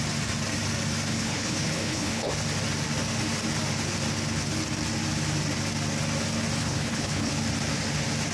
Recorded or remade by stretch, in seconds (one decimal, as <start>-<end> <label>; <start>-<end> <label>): 0.0-1.1 recorded; 1.1-2.3 remade; 2.3-6.6 recorded; 6.6-7.3 remade; 7.3-8.3 recorded